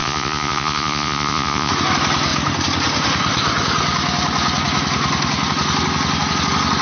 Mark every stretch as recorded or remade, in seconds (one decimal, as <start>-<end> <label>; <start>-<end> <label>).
0.0-1.7 remade; 1.7-6.8 recorded